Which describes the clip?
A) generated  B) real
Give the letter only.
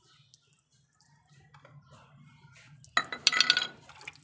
B